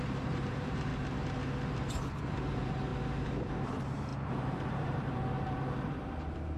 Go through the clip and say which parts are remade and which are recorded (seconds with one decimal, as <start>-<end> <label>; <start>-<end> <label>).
0.0-0.9 remade; 0.9-2.5 recorded; 2.5-2.9 remade; 2.9-3.6 recorded; 3.6-6.6 remade